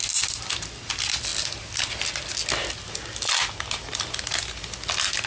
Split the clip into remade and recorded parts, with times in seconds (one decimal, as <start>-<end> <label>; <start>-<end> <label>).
0.0-5.3 recorded